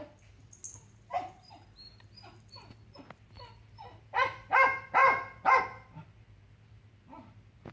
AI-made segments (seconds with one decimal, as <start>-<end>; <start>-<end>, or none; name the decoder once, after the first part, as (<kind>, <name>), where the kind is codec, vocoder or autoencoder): none